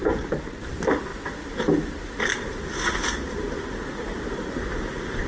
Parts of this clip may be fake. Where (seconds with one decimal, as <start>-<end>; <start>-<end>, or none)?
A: none